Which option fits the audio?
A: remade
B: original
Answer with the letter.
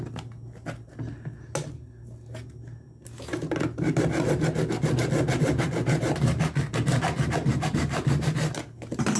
B